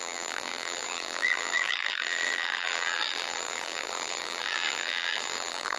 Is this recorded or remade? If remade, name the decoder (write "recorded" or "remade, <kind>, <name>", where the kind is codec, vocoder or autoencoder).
remade, vocoder, BigVGAN v2